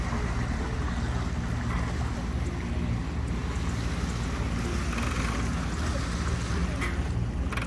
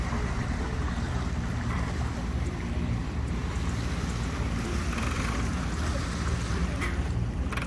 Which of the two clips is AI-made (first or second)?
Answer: second